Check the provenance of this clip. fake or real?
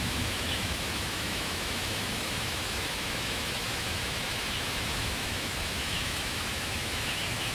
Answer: fake